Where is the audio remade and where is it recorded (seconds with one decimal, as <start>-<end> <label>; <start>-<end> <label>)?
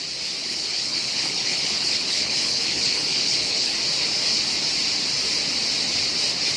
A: 0.0-0.4 recorded; 0.4-3.7 remade; 3.7-6.6 recorded